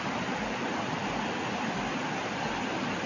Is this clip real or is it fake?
real